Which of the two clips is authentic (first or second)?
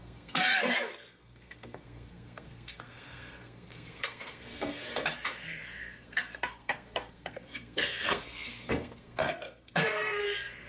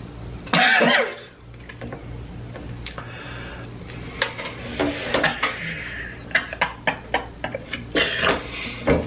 second